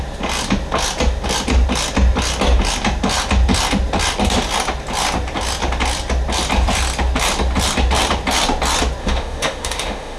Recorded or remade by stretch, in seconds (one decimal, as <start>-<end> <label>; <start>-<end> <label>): 0.0-9.0 recorded; 9.0-10.2 remade